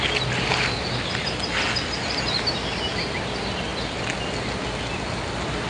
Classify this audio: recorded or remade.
recorded